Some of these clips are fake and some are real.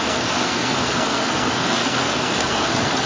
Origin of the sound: fake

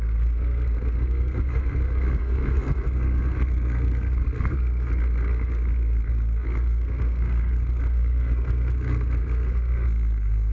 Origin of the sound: fake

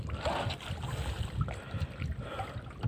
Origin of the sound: real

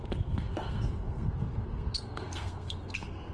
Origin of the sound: fake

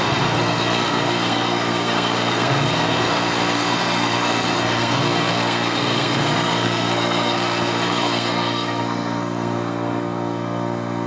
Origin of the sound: fake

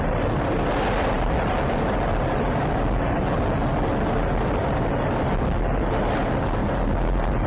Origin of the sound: real